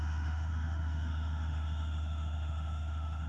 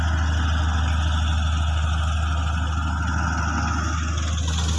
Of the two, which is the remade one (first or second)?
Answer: first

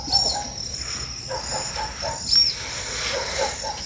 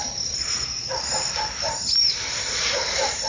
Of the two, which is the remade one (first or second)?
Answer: second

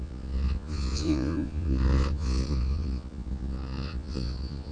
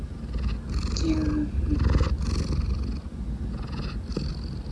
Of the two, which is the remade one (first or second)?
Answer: first